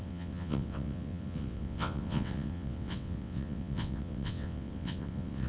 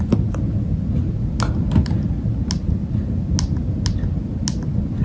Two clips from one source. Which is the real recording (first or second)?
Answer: second